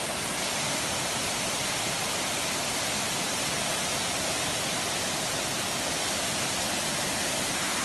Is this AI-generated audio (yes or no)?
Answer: no